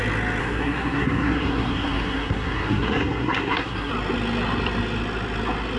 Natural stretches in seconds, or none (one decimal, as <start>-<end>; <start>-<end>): 0.0-0.4; 3.9-5.8

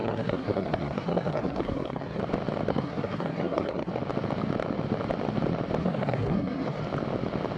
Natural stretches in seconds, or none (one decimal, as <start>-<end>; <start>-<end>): 2.2-2.7; 3.9-5.8; 6.8-7.6

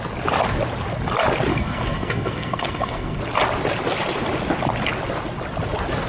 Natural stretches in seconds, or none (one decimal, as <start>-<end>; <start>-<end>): 0.0-1.5; 3.2-6.1

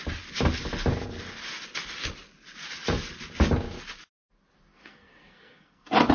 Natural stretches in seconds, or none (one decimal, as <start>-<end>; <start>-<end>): 0.0-4.7

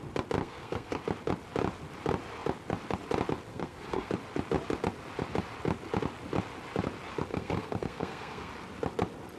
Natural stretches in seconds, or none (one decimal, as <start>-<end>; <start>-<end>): 0.0-0.4; 1.0-3.5; 4.1-7.3; 8.5-9.4

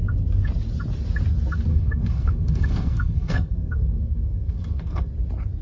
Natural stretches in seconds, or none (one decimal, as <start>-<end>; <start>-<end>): 0.0-1.7; 5.1-5.6

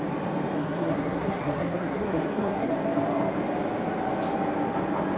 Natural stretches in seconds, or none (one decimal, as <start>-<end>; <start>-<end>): 0.0-0.6; 2.7-5.2

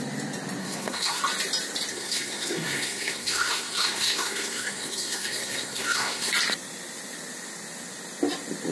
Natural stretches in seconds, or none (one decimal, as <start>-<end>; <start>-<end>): 0.0-0.6; 1.2-1.9; 6.3-8.7